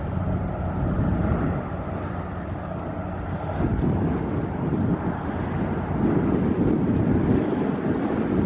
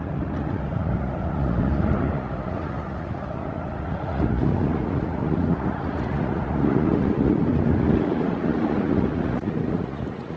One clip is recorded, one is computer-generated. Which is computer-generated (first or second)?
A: second